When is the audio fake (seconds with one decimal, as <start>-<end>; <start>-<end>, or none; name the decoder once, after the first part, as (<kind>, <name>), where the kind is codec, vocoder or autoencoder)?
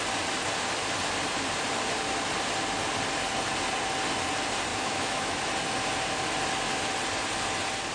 4.7-5.4 (autoencoder, DAC-VAE)